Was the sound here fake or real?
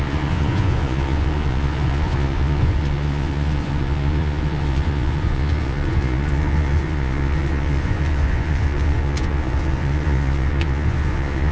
fake